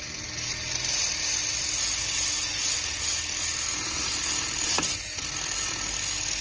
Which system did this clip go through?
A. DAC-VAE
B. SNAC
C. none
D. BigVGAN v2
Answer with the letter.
C